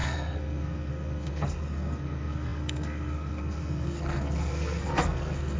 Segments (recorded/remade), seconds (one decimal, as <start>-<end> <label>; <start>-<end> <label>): 0.0-5.6 remade